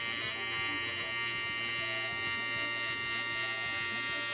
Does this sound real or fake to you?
real